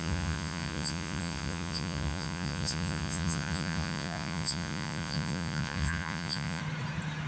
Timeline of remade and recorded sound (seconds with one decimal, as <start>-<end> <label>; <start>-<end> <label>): 0.0-6.6 remade; 6.6-7.3 recorded